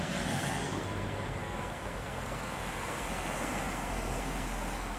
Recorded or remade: remade